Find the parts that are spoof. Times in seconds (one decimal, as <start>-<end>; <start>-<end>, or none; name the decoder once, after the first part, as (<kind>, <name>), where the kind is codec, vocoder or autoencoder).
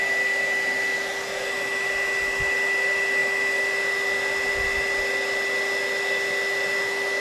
none